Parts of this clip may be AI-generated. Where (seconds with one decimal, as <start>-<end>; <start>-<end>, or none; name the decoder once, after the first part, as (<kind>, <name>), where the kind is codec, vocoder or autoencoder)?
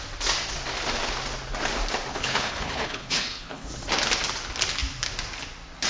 2.1-3.7 (codec, HILCodec)